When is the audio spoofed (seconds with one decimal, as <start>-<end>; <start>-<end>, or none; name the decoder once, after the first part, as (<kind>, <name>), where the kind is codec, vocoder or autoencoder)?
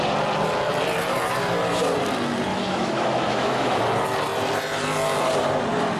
2.5-3.8 (autoencoder, DAC-VAE)